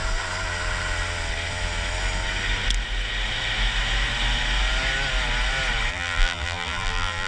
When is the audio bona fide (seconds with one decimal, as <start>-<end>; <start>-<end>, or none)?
0.0-5.9